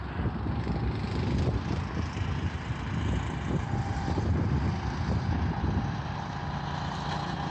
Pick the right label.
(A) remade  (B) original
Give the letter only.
B